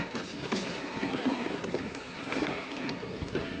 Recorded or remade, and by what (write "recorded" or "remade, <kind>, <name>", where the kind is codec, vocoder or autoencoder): remade, codec, SNAC